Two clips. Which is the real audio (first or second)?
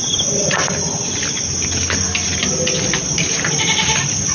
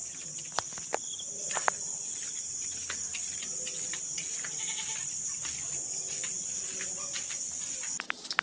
first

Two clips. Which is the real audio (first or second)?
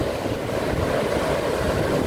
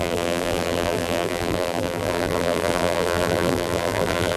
first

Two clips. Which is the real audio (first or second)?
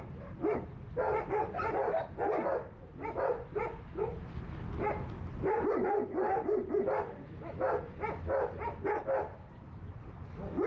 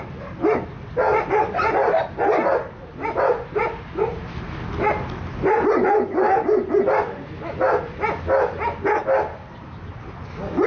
second